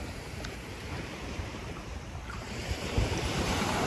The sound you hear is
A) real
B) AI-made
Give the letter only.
B